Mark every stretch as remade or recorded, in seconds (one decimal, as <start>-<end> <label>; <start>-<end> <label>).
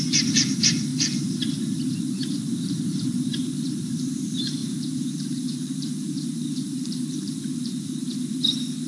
0.0-8.9 remade